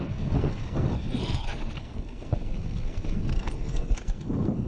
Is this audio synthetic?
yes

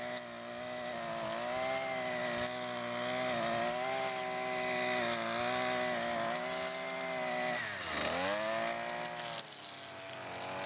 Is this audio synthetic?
no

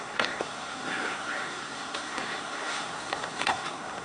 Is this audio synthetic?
yes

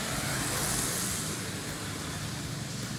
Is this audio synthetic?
no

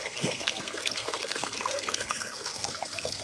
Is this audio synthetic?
yes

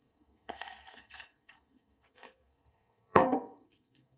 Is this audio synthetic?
yes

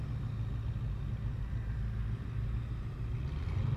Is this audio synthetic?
no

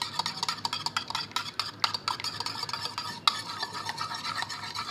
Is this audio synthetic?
no